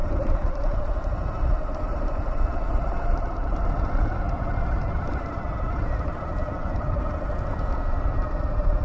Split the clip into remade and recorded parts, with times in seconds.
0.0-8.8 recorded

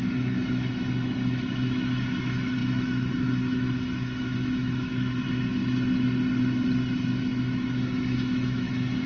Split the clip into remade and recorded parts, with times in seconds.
0.0-5.6 remade; 5.6-7.2 recorded; 7.2-9.1 remade

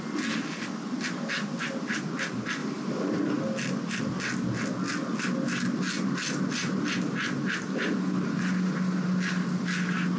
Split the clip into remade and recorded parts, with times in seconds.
0.0-2.6 recorded; 2.6-3.2 remade; 3.2-10.2 recorded